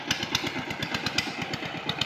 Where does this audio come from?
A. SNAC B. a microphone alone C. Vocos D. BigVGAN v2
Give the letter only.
B